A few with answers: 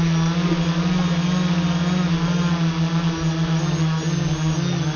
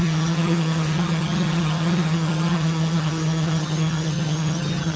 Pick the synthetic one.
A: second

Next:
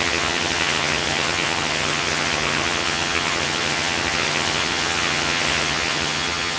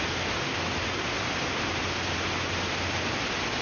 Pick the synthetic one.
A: first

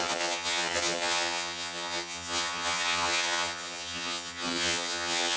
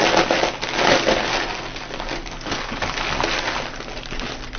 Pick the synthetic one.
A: first